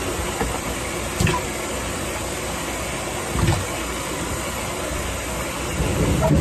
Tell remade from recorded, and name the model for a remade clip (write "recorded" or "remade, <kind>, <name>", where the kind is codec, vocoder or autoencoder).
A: recorded